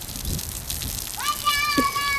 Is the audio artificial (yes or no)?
no